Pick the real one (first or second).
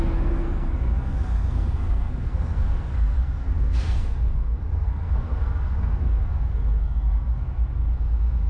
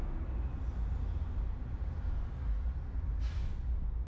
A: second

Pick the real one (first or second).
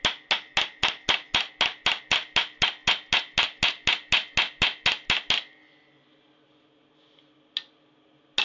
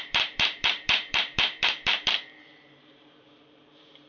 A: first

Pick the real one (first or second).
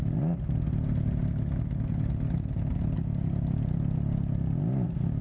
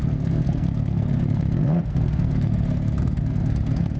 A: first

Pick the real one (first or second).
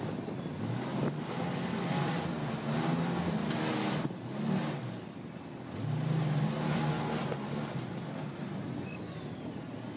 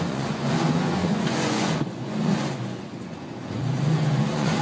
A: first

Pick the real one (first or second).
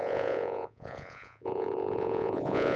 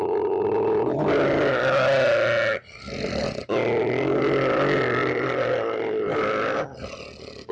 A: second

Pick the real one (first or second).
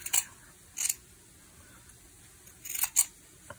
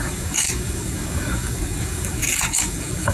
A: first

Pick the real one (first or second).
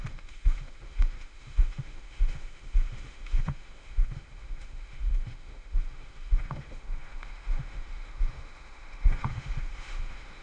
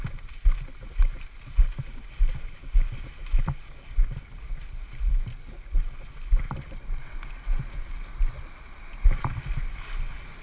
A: second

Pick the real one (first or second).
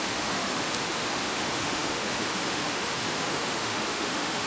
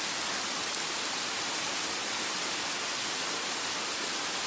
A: second